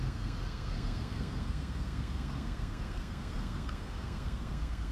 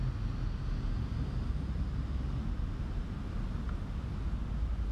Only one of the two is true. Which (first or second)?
second